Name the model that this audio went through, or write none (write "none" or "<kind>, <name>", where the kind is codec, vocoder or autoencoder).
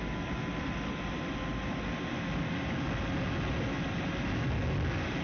none